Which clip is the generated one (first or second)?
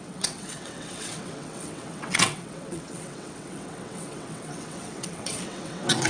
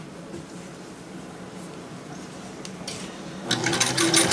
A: first